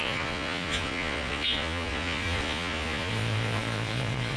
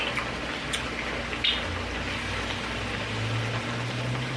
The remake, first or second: first